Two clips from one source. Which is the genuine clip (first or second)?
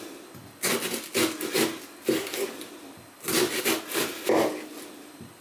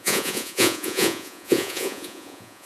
first